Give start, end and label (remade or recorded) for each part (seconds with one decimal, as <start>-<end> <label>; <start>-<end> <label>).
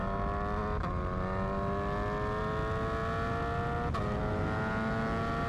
0.0-5.5 recorded